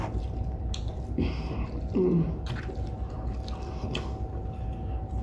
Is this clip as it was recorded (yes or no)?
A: yes